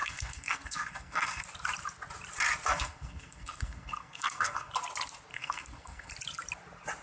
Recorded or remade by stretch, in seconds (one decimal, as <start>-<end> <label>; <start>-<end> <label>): 0.0-1.4 remade; 1.4-2.7 recorded; 2.7-4.7 remade; 4.7-5.3 recorded; 5.3-6.1 remade; 6.1-7.0 recorded